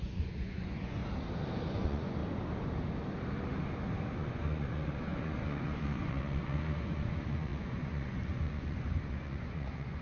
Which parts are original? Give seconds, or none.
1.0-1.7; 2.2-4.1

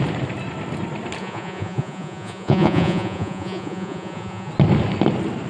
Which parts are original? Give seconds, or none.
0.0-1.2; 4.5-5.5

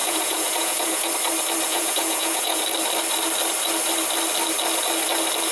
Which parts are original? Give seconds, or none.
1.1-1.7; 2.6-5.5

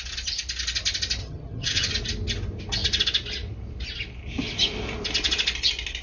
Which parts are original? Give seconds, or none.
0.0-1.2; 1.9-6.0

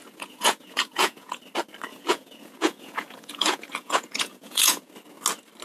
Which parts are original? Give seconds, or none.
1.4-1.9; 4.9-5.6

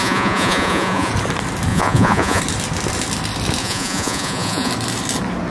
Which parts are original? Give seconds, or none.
1.1-1.7; 2.4-3.6; 4.7-5.5